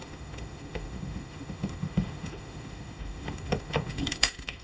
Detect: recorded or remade remade